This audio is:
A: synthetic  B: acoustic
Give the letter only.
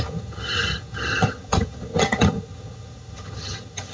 A